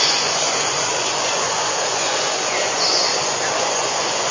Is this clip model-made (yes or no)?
yes